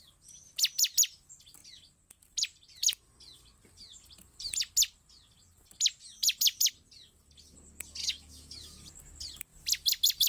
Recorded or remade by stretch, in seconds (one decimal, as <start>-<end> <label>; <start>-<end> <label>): 0.0-8.0 recorded; 8.0-8.8 remade; 8.8-10.3 recorded